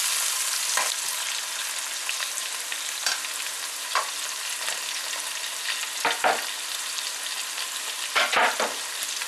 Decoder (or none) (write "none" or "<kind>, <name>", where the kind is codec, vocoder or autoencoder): none